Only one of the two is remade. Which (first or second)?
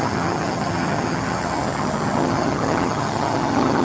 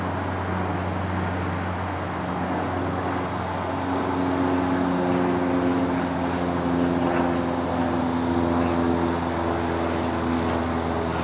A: first